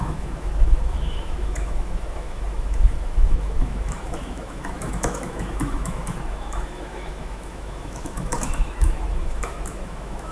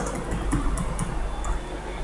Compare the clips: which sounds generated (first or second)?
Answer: first